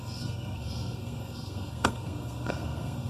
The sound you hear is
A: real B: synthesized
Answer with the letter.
B